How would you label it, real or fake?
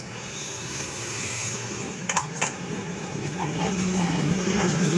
fake